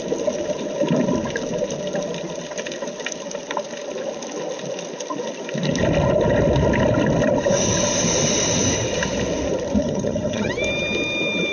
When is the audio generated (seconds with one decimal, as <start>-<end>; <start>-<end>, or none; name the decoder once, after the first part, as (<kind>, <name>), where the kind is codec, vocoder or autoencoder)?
9.8-10.5 (vocoder, HiFi-GAN)